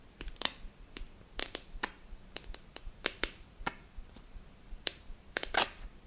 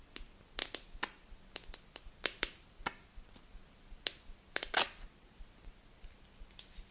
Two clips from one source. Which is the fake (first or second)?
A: first